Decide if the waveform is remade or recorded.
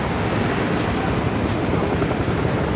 recorded